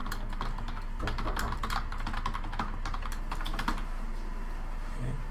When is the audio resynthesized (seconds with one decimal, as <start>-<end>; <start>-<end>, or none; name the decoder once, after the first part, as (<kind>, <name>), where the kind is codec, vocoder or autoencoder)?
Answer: none

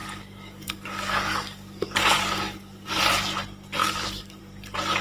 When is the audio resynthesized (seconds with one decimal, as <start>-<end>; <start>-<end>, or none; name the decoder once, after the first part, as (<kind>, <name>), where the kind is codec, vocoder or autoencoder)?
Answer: 0.0-3.0 (codec, DAC); 3.8-4.4